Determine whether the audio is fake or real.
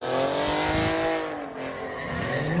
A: real